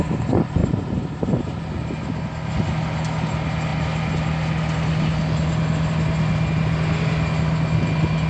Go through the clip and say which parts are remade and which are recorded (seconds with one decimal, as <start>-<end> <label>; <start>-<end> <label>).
0.0-0.6 recorded; 0.6-1.6 remade; 1.6-8.3 recorded